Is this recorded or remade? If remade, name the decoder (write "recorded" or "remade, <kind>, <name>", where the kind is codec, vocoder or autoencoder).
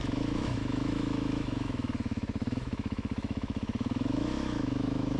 remade, autoencoder, DAC-VAE